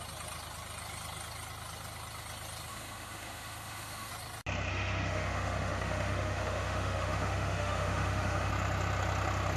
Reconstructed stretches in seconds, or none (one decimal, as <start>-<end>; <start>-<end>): 2.7-4.1; 4.7-8.5